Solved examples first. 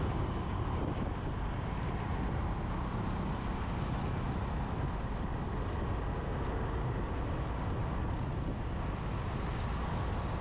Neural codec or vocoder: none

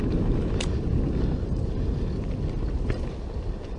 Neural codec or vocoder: none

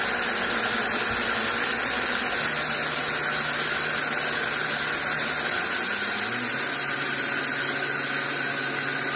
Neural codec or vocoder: none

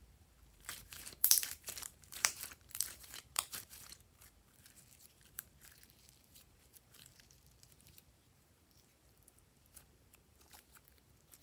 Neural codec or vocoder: vocoder, BigVGAN v2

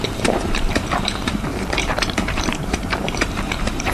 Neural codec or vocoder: vocoder, BigVGAN v2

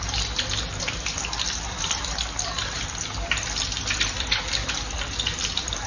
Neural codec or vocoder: vocoder, BigVGAN v2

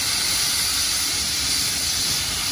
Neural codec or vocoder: none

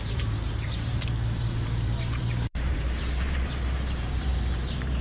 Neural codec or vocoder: vocoder, BigVGAN v2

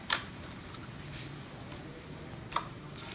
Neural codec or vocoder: vocoder, BigVGAN v2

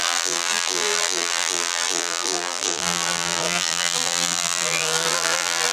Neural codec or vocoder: vocoder, BigVGAN v2